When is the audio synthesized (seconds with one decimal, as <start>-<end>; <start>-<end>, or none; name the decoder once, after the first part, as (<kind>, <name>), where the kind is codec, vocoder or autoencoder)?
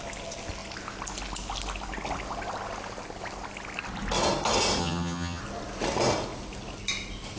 4.8-5.4 (vocoder, HiFi-GAN)